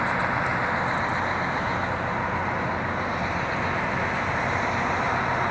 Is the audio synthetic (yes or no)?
no